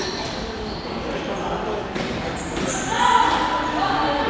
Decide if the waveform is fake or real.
real